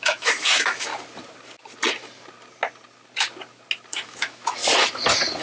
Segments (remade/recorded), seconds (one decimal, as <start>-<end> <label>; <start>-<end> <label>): 0.0-0.9 remade; 0.9-3.9 recorded; 3.9-4.6 remade; 4.6-5.4 recorded